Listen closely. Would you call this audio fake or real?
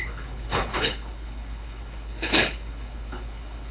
fake